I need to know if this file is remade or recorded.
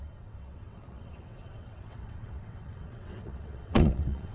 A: remade